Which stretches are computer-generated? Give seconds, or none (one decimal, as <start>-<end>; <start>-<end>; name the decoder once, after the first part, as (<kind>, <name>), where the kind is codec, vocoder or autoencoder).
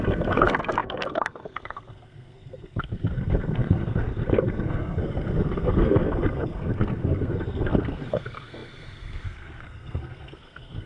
0.0-10.9 (codec, SNAC)